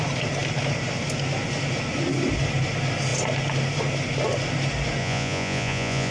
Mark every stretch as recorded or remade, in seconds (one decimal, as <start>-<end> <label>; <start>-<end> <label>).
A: 0.0-5.0 recorded; 5.0-6.1 remade